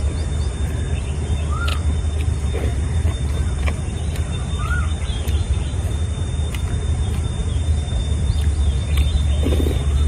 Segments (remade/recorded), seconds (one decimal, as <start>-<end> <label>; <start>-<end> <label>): 0.0-2.7 recorded; 2.7-6.8 remade; 6.8-10.1 recorded